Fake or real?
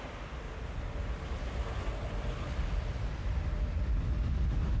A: real